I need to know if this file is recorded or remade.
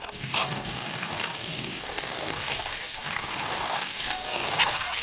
remade